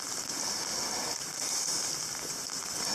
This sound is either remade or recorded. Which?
recorded